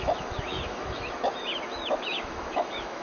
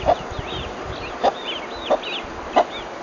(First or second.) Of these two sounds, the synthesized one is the first